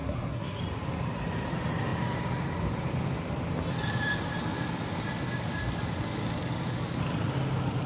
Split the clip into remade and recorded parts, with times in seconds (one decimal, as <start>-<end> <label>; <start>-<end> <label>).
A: 0.0-0.6 remade; 0.6-7.9 recorded